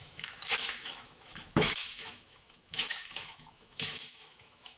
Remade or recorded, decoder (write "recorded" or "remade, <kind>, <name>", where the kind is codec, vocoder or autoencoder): remade, autoencoder, DAC-VAE